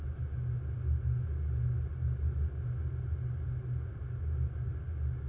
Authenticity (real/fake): real